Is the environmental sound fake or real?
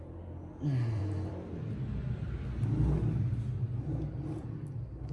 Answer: real